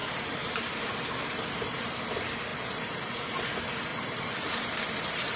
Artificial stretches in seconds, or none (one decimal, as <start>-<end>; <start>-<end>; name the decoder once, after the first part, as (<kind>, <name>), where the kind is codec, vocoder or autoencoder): 0.0-2.0 (vocoder, BigVGAN v2); 2.5-3.4; 3.9-5.4